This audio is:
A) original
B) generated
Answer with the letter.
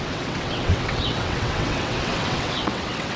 B